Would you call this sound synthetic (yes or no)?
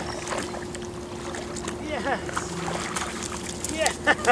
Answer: no